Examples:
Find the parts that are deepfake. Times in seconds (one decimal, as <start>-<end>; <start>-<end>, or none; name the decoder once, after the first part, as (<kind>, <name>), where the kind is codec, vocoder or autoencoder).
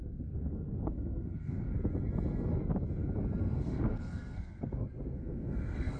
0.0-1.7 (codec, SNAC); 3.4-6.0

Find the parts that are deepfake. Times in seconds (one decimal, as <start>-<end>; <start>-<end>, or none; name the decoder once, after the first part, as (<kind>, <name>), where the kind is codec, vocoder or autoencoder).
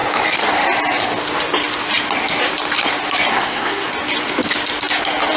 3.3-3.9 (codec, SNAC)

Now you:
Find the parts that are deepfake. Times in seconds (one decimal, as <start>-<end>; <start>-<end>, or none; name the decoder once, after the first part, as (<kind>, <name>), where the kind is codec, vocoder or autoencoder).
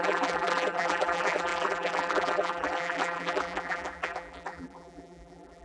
0.0-5.6 (vocoder, BigVGAN v2)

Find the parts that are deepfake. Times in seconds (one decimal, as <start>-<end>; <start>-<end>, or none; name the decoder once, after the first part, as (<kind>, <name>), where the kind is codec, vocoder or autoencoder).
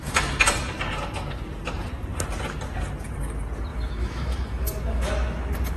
3.7-5.8 (autoencoder, DAC-VAE)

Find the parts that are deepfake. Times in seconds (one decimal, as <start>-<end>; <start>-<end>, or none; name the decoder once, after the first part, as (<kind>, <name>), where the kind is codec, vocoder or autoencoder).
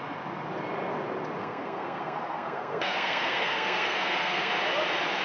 1.4-4.5 (codec, SNAC)